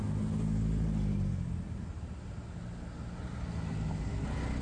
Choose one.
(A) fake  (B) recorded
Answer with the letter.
B